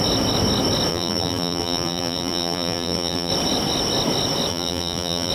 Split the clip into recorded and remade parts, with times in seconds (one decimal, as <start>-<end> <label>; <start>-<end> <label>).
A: 0.0-0.9 recorded; 0.9-3.3 remade; 3.3-4.5 recorded; 4.5-5.3 remade

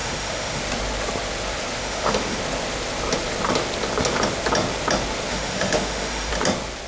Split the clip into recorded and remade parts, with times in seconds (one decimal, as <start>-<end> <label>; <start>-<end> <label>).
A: 0.0-0.6 remade; 0.6-1.8 recorded; 1.8-2.4 remade; 2.4-5.3 recorded; 5.3-6.3 remade; 6.3-6.9 recorded

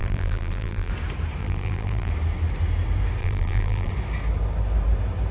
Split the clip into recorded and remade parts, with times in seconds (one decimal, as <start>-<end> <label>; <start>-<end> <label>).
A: 0.0-0.9 remade; 0.9-1.4 recorded; 1.4-2.1 remade; 2.1-3.2 recorded; 3.2-3.9 remade; 3.9-5.3 recorded

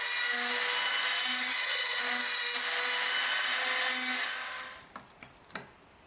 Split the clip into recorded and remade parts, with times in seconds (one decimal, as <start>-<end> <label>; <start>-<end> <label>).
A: 0.0-1.5 recorded; 1.5-2.0 remade; 2.0-6.1 recorded

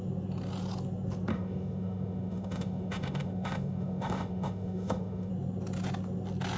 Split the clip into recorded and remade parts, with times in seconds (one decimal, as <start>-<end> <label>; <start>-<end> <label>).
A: 0.0-1.3 recorded; 1.3-5.3 remade; 5.3-6.6 recorded